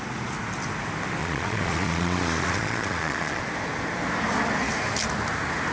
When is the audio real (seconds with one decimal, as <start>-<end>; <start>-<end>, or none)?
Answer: 0.0-1.2; 3.4-5.7